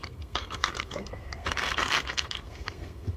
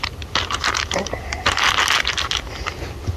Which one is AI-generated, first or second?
first